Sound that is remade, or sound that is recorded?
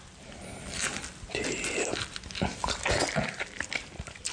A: recorded